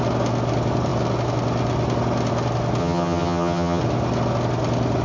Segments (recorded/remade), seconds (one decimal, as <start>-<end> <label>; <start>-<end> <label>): 0.0-2.8 recorded; 2.8-3.8 remade; 3.8-5.0 recorded